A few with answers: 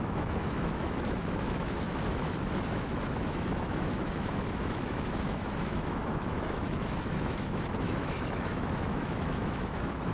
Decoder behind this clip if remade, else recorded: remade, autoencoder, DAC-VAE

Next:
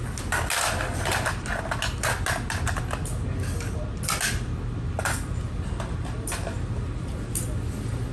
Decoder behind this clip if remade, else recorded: recorded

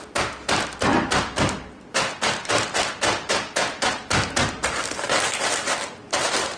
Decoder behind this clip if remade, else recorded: recorded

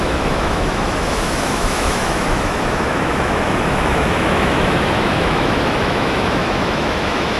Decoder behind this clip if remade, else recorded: remade, autoencoder, DAC-VAE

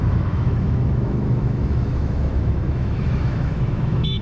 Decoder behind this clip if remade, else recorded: remade, autoencoder, DAC-VAE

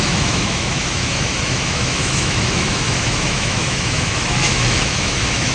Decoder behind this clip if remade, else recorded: remade, autoencoder, DAC-VAE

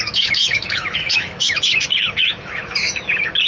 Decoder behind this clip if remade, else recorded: remade, autoencoder, DAC-VAE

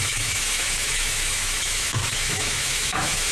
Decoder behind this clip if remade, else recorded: remade, autoencoder, DAC-VAE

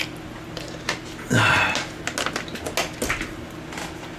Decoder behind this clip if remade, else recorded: recorded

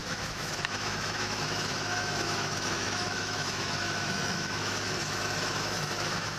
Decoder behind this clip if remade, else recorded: remade, autoencoder, DAC-VAE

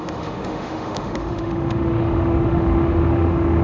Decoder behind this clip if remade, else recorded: remade, autoencoder, DAC-VAE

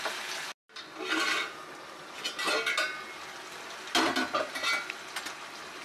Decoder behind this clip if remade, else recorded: recorded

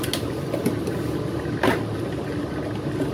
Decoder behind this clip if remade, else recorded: recorded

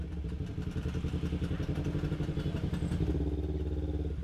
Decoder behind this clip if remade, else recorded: recorded